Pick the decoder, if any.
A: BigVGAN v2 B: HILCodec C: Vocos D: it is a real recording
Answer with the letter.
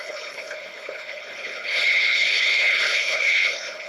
B